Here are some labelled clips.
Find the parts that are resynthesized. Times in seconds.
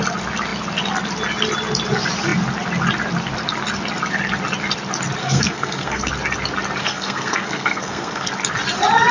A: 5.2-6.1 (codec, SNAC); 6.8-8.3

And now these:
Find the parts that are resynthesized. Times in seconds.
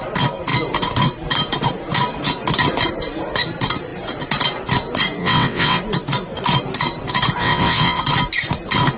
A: 5.2-5.8 (vocoder, WaveNeXt); 7.4-8.0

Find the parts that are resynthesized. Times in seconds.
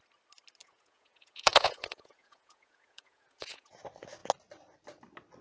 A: 0.6-3.8 (vocoder, Vocos)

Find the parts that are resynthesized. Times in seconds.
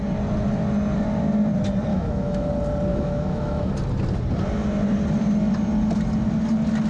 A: 1.9-2.5 (autoencoder, DAC-VAE); 2.9-3.7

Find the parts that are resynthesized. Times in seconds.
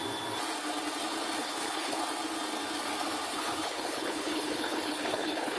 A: 1.4-2.0 (codec, HILCodec); 3.3-5.6